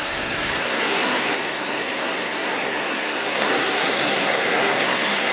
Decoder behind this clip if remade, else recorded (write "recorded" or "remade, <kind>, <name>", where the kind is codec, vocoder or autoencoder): remade, codec, SNAC